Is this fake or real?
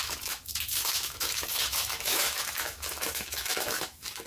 fake